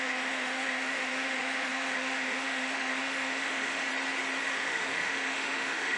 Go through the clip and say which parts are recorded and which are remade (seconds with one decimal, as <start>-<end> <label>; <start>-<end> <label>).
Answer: 0.0-3.9 remade; 3.9-4.4 recorded; 4.4-6.0 remade